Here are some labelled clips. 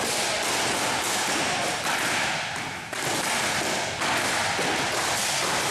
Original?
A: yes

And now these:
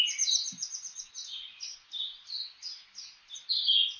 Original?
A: yes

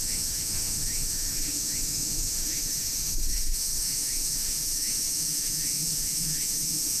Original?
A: no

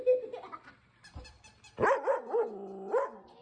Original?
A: yes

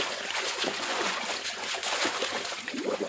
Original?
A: no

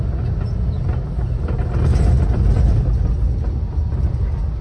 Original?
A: yes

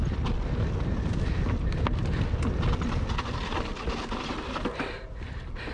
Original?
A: yes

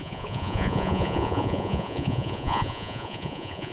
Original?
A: no